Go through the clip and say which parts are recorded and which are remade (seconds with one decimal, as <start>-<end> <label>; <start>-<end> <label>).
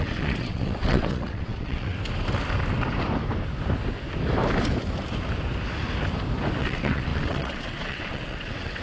0.0-1.9 remade; 1.9-6.6 recorded; 6.6-8.8 remade